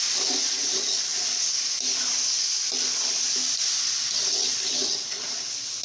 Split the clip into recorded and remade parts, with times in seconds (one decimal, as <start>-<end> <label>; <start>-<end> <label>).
0.0-5.8 recorded

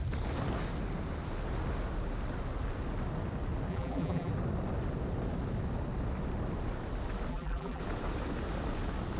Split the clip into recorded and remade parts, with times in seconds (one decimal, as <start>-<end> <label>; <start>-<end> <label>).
0.0-3.7 recorded; 3.7-4.3 remade; 4.3-7.3 recorded; 7.3-7.8 remade; 7.8-9.2 recorded

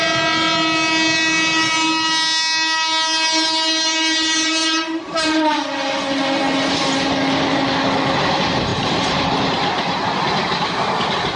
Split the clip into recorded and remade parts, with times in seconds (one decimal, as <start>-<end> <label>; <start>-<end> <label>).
0.0-4.6 recorded; 4.6-5.6 remade; 5.6-8.7 recorded; 8.7-9.3 remade; 9.3-11.4 recorded

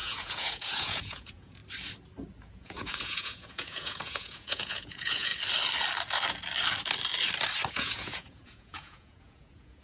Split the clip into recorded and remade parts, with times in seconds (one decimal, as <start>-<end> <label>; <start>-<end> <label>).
0.0-1.6 remade; 1.6-2.5 recorded; 2.5-5.3 remade; 5.3-7.7 recorded; 7.7-9.8 remade